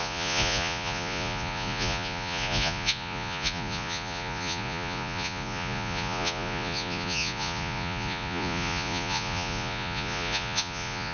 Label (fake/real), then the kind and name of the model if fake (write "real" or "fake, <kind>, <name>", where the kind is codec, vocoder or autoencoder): fake, vocoder, Vocos